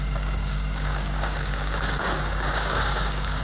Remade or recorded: remade